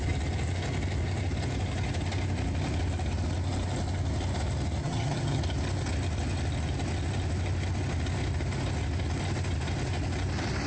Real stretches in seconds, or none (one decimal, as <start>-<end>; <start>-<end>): 0.0-4.8; 5.4-10.7